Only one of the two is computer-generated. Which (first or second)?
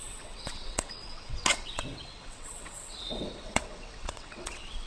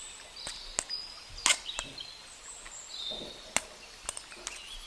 first